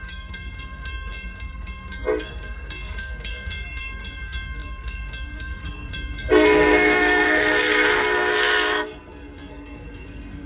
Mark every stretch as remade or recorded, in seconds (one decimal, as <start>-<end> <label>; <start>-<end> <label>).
0.0-10.5 remade